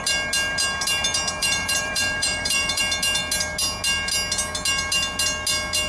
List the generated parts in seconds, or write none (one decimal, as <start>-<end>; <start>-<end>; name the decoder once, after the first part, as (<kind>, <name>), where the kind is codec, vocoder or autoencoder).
1.4-2.8 (vocoder, BigVGAN v2)